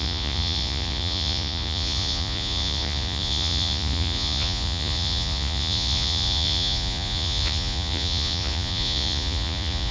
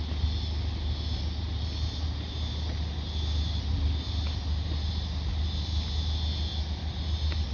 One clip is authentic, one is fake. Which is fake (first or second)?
first